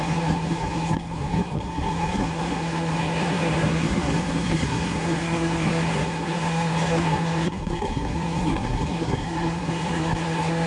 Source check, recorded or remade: remade